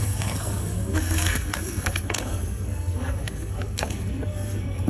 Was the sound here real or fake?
fake